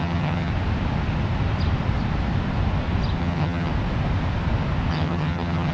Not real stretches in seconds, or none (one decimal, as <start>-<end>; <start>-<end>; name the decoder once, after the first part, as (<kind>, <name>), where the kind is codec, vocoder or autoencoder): 0.0-0.5 (vocoder, HiFi-GAN); 3.2-3.7; 4.9-5.7